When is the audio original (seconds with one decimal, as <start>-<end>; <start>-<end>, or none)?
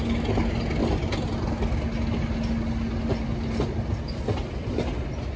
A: 0.0-5.4